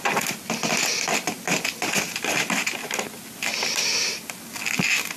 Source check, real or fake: real